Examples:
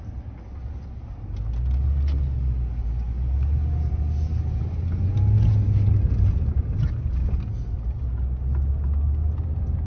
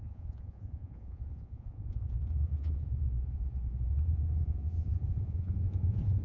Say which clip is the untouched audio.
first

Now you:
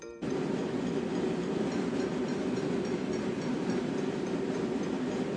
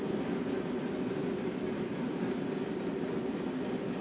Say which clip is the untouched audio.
second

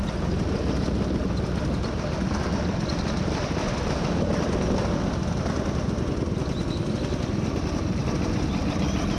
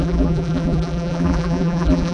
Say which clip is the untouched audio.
first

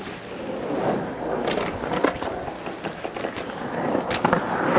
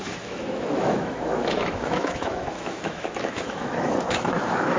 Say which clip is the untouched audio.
first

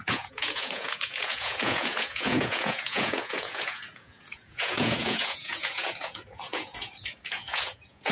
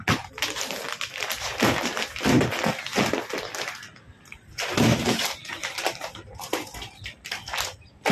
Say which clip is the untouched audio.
second